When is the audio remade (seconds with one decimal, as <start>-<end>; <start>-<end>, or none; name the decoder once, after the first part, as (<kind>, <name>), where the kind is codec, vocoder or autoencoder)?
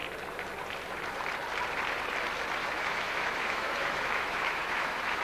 2.6-5.2 (autoencoder, DAC-VAE)